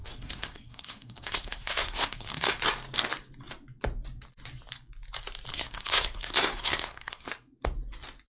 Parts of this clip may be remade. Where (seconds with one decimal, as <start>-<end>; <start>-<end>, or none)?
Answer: 0.0-2.6; 5.5-7.3